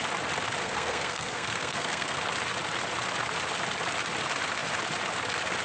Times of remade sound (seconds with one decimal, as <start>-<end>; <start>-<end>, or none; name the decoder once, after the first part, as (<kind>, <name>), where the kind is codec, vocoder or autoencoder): 0.6-2.2 (codec, SNAC)